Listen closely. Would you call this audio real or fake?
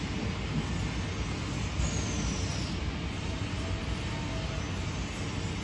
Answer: real